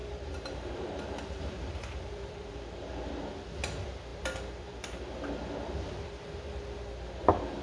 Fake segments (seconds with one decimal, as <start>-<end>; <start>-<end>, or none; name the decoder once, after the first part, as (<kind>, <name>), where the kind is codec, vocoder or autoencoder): 0.0-3.1 (vocoder, BigVGAN v2)